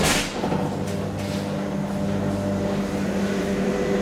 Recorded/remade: recorded